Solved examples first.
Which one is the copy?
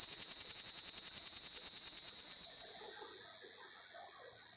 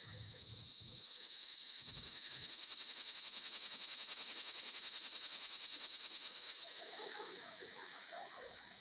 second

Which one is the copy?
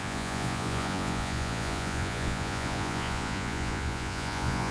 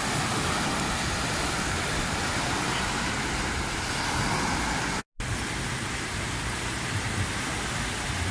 first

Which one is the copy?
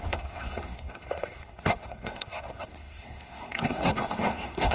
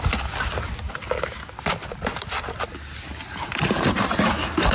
first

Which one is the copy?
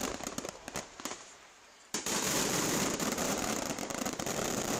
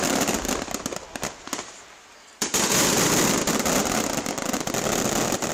first